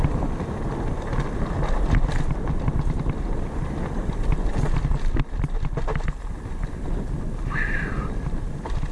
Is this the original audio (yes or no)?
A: yes